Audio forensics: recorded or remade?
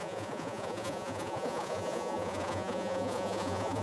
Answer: remade